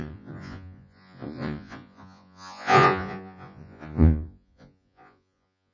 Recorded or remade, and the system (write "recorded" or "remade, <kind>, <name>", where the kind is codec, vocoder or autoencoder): remade, vocoder, Vocos